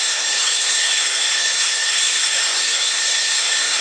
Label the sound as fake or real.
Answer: fake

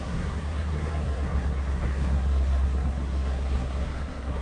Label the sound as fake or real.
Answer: fake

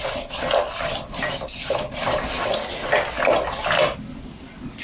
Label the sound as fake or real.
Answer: real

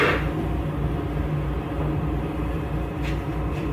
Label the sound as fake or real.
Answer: real